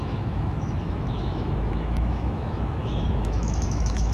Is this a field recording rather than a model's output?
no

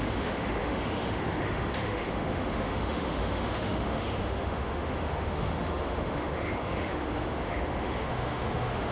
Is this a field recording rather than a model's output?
no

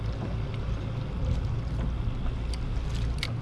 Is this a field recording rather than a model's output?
yes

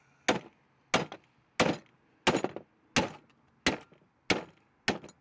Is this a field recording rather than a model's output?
yes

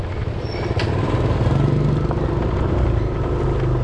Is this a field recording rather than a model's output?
yes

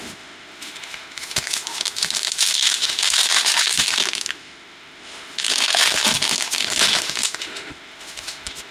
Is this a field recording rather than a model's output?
no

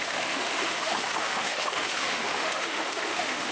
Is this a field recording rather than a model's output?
no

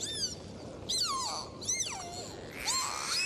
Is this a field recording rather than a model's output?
yes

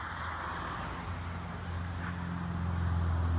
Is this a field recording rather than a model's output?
yes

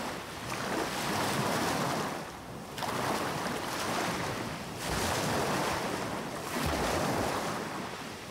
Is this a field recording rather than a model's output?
yes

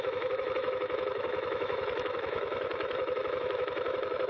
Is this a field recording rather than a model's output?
no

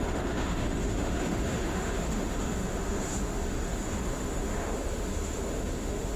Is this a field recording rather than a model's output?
no